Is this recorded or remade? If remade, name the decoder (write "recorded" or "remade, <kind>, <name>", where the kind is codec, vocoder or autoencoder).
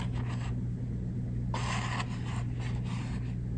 recorded